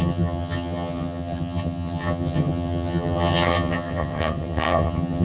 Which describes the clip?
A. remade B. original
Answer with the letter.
A